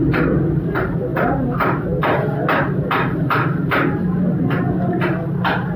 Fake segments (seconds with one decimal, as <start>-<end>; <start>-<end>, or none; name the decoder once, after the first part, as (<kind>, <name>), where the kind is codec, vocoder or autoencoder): none